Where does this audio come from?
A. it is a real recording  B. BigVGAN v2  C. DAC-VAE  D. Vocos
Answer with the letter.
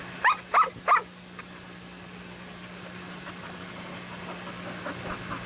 A